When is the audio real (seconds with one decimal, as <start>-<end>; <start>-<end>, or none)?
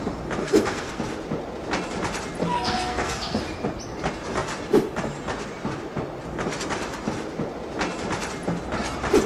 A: 0.0-0.4; 1.0-2.4; 3.4-9.3